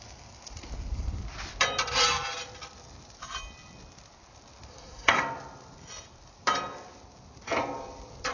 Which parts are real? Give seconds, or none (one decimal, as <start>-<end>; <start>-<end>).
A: 0.0-4.7; 5.2-8.3